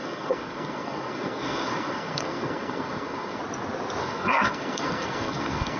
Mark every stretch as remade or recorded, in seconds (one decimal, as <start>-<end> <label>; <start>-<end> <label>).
0.0-3.4 remade; 3.4-4.0 recorded; 4.0-5.8 remade